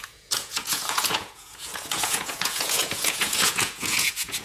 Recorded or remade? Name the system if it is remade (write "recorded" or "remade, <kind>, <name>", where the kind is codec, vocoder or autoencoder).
remade, vocoder, Vocos